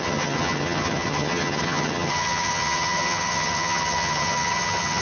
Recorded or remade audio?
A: remade